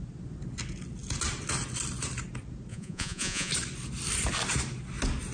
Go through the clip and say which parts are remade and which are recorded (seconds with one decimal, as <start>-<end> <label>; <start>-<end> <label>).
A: 0.0-2.7 recorded; 2.7-3.5 remade; 3.5-5.3 recorded